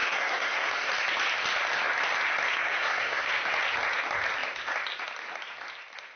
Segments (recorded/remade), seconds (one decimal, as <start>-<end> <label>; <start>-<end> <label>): 0.0-0.9 remade; 0.9-2.6 recorded; 2.6-3.3 remade; 3.3-6.2 recorded